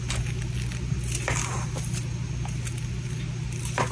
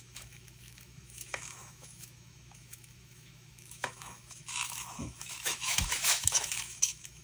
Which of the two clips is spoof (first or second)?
second